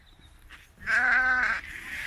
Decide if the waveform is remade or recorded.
recorded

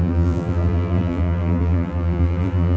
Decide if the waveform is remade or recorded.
remade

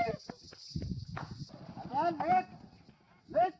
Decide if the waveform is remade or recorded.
recorded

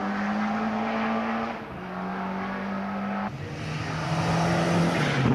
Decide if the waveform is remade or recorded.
recorded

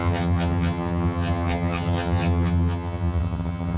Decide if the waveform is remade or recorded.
remade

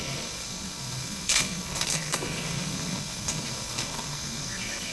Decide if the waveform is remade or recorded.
remade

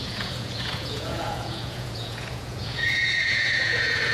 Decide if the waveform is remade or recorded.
remade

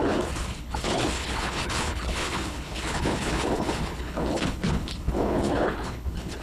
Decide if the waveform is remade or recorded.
remade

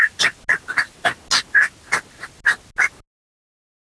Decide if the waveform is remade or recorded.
recorded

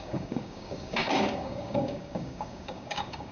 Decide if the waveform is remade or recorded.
remade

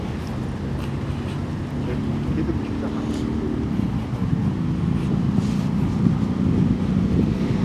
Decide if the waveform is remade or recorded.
recorded